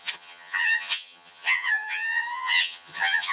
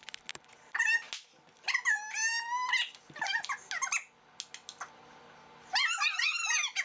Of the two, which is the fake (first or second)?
first